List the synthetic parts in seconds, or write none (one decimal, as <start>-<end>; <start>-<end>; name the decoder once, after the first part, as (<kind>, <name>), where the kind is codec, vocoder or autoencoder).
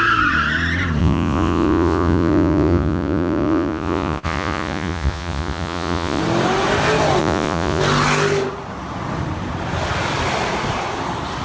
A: 1.0-6.2 (vocoder, Vocos); 7.2-7.8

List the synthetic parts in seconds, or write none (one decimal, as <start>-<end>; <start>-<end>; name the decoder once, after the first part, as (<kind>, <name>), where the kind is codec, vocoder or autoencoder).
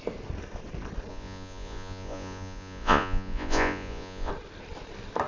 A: 1.1-4.3 (vocoder, Vocos)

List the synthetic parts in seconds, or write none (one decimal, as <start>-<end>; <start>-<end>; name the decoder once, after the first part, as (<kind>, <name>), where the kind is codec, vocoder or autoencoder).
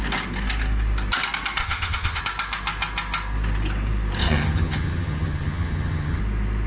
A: 1.6-2.2 (vocoder, HiFi-GAN); 4.2-6.2